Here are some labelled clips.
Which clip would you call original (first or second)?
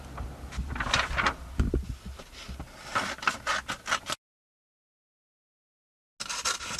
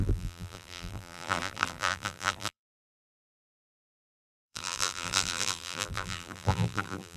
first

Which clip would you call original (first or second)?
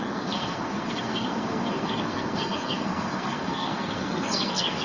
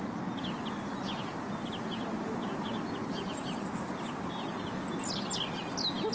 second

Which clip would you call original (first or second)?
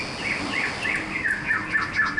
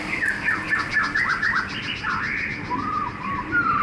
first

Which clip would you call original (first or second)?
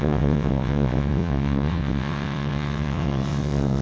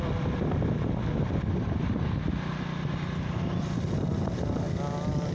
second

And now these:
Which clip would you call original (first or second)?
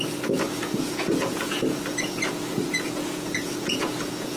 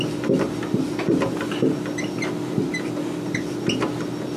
second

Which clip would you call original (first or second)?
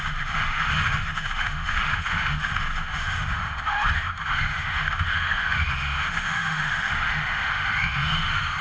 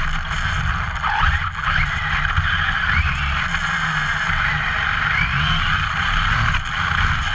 second